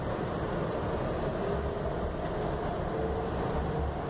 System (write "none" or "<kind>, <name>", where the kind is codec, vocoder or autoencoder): none